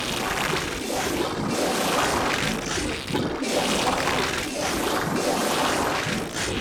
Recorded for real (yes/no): yes